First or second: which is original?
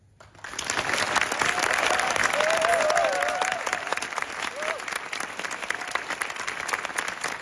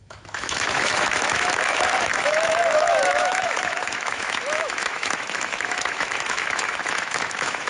first